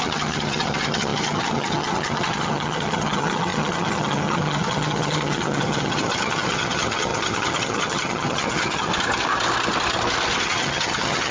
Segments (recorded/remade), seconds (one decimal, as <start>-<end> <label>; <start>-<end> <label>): 0.0-8.9 remade; 8.9-10.4 recorded; 10.4-11.3 remade